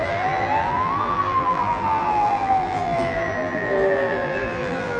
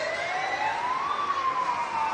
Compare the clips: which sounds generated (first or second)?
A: first